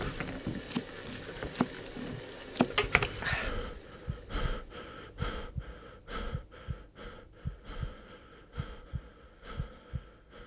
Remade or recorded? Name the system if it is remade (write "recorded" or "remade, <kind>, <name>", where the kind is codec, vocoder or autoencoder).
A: recorded